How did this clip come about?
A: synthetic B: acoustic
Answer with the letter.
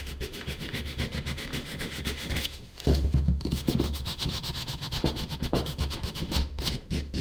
A